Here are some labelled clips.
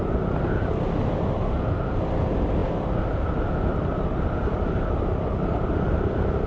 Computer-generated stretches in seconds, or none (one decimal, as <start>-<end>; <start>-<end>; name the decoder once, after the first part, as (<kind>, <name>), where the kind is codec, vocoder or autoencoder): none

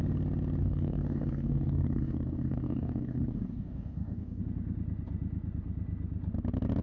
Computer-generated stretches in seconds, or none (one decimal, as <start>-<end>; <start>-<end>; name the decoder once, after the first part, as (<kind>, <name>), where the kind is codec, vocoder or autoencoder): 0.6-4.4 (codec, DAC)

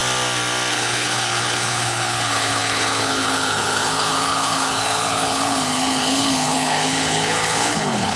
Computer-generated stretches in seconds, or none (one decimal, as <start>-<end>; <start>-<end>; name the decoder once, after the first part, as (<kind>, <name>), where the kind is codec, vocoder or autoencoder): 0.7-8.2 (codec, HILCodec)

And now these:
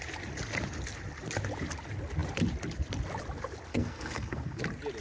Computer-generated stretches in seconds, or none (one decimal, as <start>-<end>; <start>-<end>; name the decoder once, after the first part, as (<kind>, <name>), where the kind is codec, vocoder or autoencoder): 3.7-4.6 (codec, SNAC)

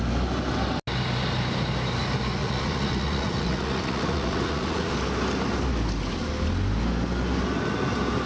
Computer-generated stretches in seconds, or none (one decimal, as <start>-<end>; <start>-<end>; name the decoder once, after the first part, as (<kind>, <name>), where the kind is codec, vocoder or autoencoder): 2.4-4.9 (vocoder, Vocos)

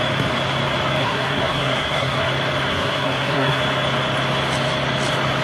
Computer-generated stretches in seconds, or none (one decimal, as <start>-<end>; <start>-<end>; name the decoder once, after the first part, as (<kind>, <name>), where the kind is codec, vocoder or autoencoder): 1.0-2.3 (codec, SNAC); 2.7-3.6

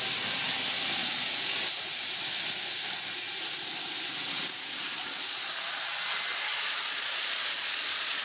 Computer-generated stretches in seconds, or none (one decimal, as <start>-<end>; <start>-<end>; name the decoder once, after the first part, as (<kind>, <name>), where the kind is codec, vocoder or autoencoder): 1.0-1.9 (vocoder, Vocos); 4.9-5.5; 6.3-8.2

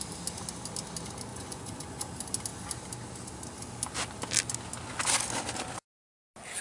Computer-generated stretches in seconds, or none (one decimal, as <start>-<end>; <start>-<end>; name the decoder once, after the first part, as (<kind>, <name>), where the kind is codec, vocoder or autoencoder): 1.3-2.1 (vocoder, Vocos)